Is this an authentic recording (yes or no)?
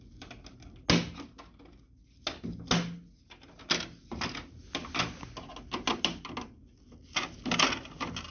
yes